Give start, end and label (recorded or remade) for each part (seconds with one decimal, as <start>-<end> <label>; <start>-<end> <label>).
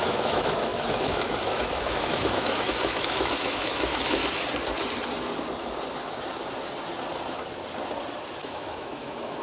0.0-4.2 remade; 4.2-8.4 recorded; 8.4-9.4 remade